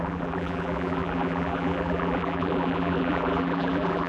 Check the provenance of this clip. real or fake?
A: fake